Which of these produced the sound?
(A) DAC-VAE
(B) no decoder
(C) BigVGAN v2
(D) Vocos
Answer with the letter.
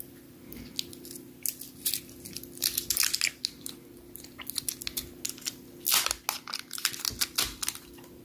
B